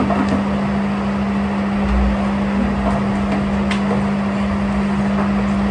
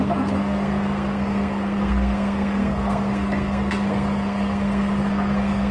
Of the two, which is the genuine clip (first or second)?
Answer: first